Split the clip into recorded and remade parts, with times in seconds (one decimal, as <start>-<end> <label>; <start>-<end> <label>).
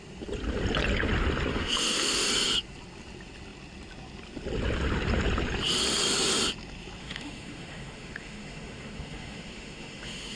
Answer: 0.0-1.5 recorded; 1.5-2.3 remade; 2.3-7.0 recorded; 7.0-10.4 remade